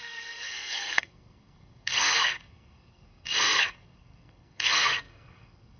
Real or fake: fake